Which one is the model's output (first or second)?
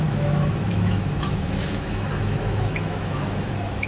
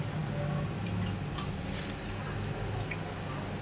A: first